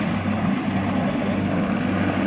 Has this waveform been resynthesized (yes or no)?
no